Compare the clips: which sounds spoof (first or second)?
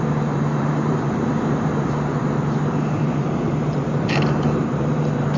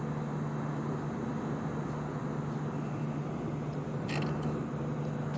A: first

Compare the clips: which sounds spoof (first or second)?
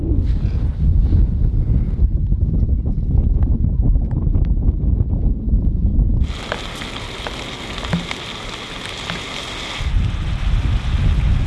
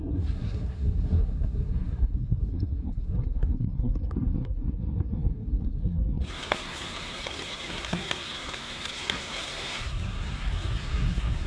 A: second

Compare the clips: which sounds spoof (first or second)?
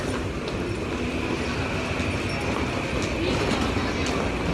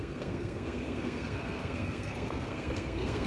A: second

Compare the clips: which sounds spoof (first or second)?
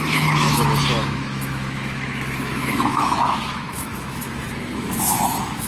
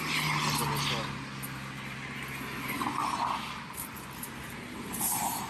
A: first